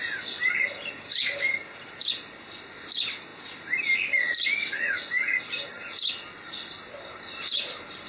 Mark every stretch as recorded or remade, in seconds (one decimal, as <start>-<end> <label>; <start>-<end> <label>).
0.0-8.1 recorded

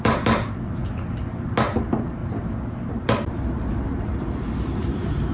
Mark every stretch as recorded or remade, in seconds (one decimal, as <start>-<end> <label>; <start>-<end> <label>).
0.0-0.8 remade; 0.8-1.8 recorded; 1.8-2.2 remade; 2.2-2.9 recorded; 2.9-5.3 remade

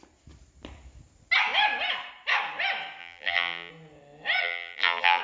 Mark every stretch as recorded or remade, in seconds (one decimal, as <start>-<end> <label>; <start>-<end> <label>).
0.0-3.0 recorded; 3.0-3.7 remade; 3.7-4.4 recorded; 4.4-5.2 remade

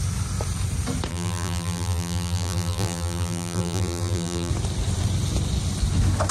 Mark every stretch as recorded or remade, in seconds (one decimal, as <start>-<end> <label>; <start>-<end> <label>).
0.0-1.1 recorded; 1.1-4.5 remade; 4.5-6.3 recorded

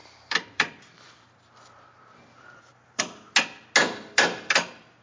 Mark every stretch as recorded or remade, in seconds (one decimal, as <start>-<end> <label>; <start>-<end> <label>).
0.0-3.0 remade; 3.0-3.8 recorded; 3.8-5.0 remade

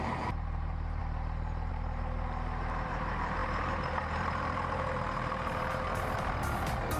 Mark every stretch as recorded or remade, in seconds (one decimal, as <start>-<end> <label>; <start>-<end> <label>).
0.0-1.0 remade; 1.0-1.7 recorded; 1.7-7.0 remade

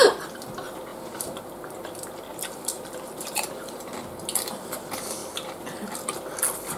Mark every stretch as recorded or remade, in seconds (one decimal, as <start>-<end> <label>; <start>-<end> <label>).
0.0-0.9 recorded; 0.9-1.4 remade; 1.4-2.3 recorded; 2.3-3.9 remade; 3.9-6.8 recorded

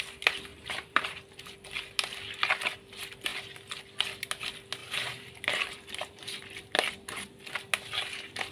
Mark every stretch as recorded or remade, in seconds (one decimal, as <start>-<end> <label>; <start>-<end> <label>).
0.0-0.5 recorded; 0.5-1.5 remade; 1.5-4.8 recorded; 4.8-6.6 remade; 6.6-8.5 recorded